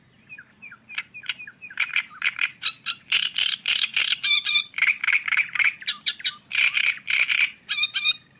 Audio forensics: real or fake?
fake